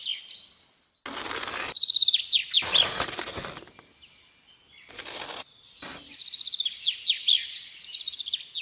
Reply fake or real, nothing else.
real